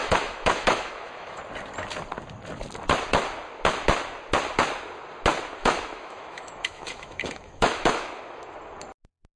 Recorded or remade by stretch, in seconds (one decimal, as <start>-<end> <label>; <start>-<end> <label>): 0.0-1.4 remade; 1.4-5.6 recorded; 5.6-8.2 remade; 8.2-9.4 recorded